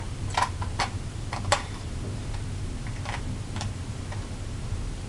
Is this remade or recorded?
remade